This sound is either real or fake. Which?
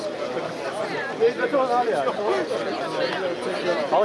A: real